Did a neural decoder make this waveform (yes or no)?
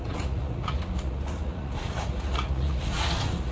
yes